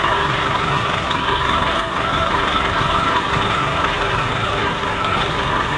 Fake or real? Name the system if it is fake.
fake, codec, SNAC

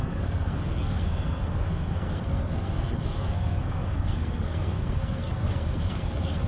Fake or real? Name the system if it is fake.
fake, codec, SNAC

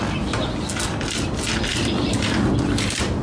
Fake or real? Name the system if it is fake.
real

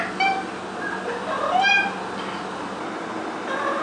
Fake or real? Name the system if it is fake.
real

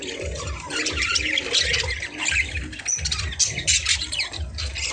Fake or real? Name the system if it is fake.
real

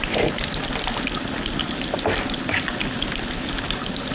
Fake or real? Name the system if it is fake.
real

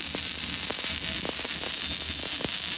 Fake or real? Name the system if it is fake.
real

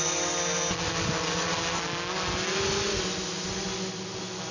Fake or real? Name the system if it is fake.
real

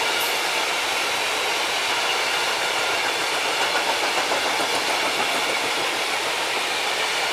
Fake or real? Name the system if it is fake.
real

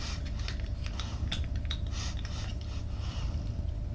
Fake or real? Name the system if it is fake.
real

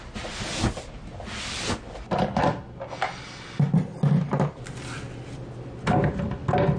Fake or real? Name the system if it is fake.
real